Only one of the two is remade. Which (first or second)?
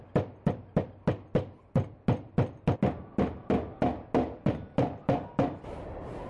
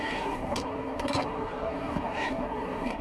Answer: second